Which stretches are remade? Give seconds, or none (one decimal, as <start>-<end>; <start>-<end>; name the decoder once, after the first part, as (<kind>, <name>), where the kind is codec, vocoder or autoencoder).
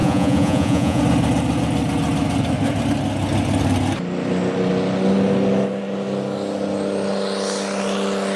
0.0-1.0 (vocoder, Vocos)